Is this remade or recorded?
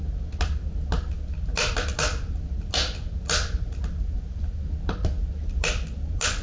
recorded